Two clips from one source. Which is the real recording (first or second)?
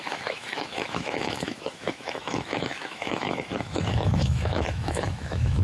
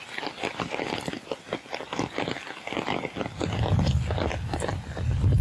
second